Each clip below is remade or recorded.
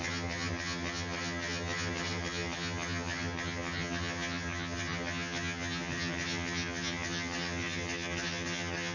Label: remade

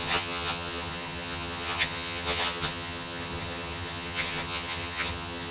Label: remade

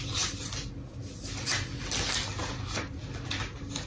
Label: recorded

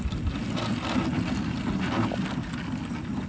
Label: recorded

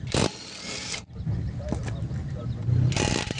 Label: recorded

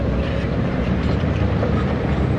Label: remade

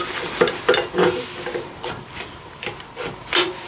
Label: recorded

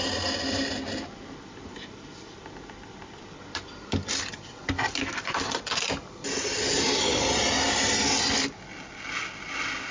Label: recorded